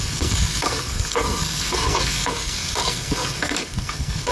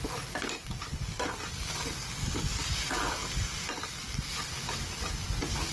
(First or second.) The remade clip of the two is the first